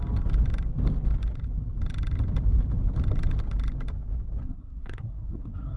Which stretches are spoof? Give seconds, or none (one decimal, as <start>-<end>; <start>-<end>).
4.4-5.8

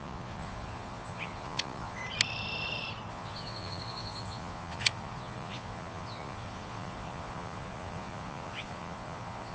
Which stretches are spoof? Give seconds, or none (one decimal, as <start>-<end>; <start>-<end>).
0.0-2.0; 3.1-9.5

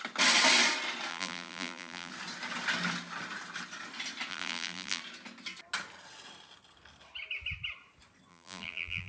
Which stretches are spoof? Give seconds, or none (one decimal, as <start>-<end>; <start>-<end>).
1.1-2.1; 4.3-5.0; 8.3-9.1

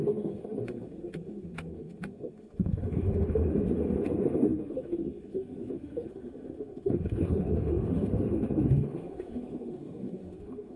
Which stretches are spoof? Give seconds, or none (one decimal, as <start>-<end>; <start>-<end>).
0.0-10.8

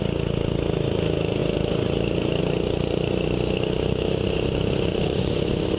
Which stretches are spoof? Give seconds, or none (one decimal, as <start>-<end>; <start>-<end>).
4.9-5.8

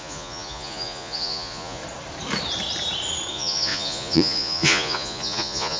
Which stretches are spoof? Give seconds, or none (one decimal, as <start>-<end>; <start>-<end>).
0.0-1.8; 3.3-5.8